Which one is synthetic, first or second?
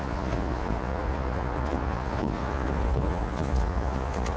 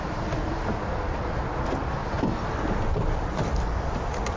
first